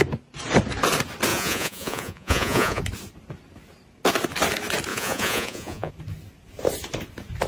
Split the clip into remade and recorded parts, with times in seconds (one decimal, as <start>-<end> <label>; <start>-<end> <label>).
0.0-1.3 recorded; 1.3-2.8 remade; 2.8-4.9 recorded; 4.9-5.9 remade; 5.9-7.5 recorded